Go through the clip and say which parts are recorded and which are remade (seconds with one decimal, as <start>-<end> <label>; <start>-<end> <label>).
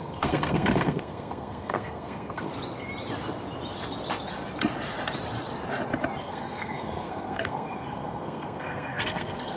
0.0-2.5 remade; 2.5-6.2 recorded; 6.2-9.6 remade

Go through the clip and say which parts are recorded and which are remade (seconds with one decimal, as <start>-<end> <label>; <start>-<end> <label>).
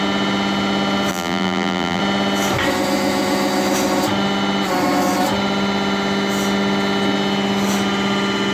0.0-1.1 recorded; 1.1-2.0 remade; 2.0-8.5 recorded